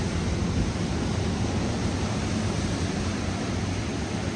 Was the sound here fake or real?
real